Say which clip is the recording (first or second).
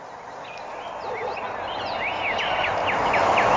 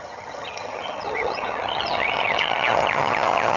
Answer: first